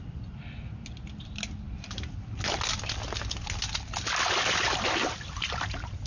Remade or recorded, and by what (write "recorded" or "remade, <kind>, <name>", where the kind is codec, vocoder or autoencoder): recorded